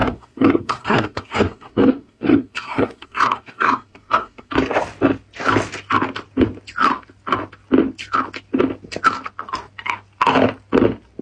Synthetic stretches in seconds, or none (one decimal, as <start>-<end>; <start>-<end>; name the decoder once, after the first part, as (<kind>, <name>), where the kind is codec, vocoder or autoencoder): 0.0-4.5 (codec, SNAC)